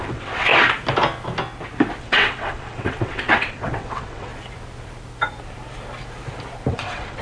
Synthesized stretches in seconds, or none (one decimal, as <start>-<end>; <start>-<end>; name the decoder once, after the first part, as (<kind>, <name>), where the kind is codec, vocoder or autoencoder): 0.0-0.5 (vocoder, WaveNeXt); 2.0-4.3; 6.7-7.2